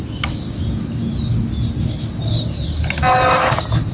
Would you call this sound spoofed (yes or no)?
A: no